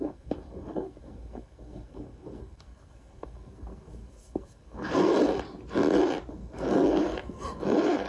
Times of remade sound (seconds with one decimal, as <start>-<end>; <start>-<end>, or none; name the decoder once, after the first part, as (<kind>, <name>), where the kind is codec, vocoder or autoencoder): 0.0-5.1 (codec, SNAC); 6.3-8.1